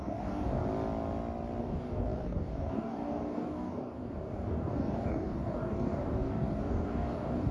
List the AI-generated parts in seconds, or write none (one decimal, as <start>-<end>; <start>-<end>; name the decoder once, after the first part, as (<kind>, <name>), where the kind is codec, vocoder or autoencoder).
0.0-0.6 (codec, DAC); 1.6-7.5